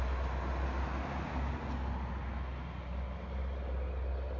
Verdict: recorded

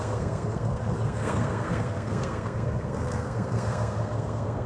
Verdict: remade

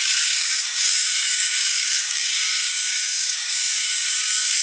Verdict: remade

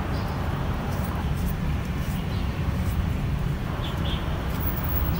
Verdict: remade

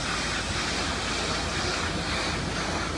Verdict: recorded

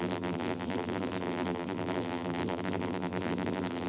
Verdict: remade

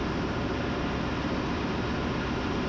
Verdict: recorded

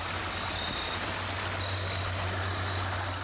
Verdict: recorded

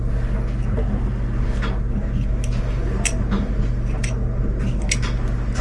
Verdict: recorded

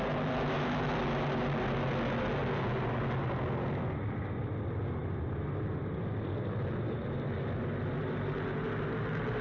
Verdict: recorded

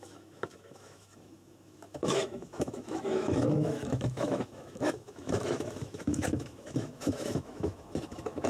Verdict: remade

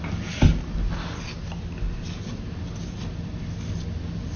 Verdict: recorded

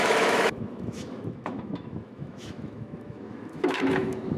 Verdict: remade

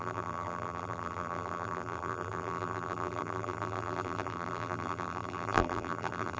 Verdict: remade